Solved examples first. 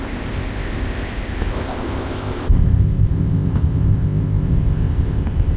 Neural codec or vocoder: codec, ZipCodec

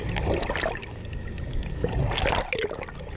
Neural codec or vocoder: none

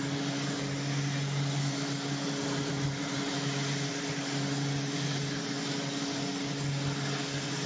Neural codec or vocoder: none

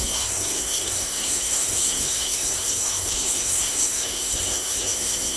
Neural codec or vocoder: codec, SNAC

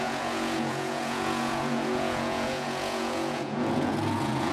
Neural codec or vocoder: vocoder, Vocos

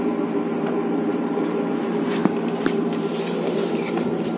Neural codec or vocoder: vocoder, BigVGAN v2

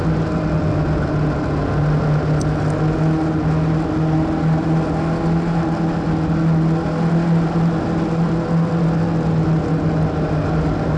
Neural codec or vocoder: none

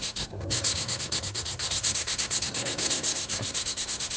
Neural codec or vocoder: codec, SNAC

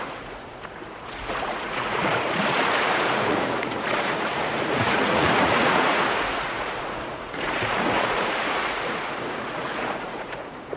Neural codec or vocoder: vocoder, Vocos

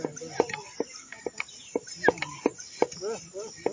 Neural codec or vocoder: none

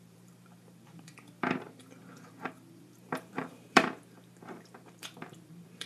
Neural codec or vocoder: vocoder, BigVGAN v2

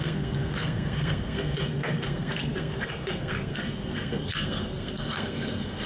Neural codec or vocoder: codec, SNAC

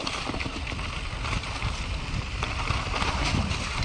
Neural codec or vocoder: none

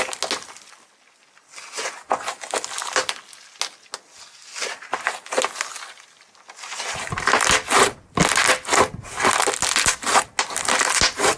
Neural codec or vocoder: none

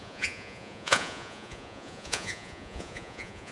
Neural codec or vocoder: vocoder, Vocos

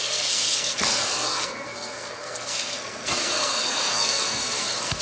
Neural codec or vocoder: codec, SNAC